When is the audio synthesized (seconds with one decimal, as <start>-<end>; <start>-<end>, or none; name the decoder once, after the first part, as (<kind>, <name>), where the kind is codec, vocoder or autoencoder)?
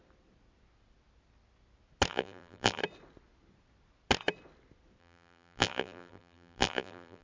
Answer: 2.1-2.8 (vocoder, BigVGAN v2); 5.0-7.2